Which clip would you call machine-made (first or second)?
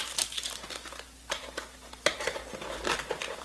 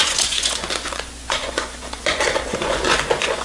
second